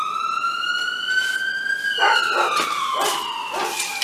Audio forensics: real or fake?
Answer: real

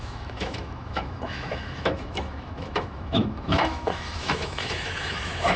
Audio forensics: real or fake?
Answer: fake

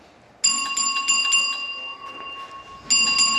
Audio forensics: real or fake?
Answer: real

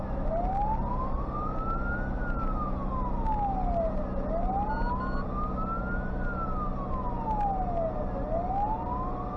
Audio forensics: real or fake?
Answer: real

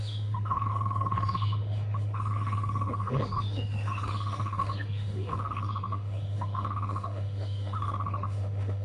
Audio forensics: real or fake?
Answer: fake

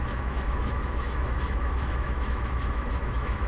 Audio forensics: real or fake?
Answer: fake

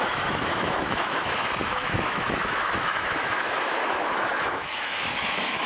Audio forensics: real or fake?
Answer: fake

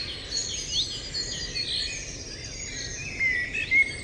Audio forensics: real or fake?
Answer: real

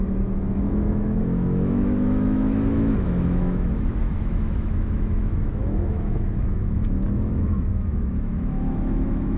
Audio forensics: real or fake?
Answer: fake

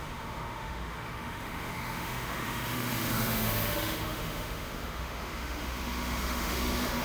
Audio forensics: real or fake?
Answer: fake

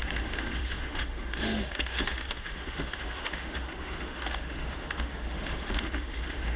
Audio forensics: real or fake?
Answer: fake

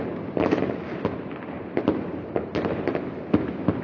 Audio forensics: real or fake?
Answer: real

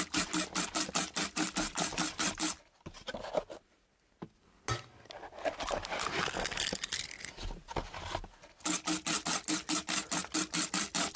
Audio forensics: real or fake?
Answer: real